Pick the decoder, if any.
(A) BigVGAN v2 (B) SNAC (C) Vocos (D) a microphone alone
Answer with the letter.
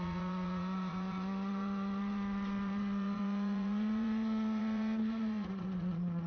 C